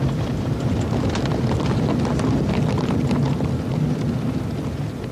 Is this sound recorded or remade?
recorded